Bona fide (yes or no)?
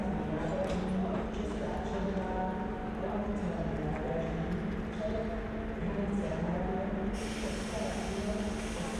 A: yes